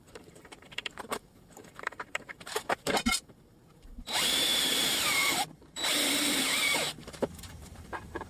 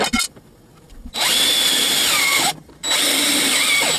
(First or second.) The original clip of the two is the second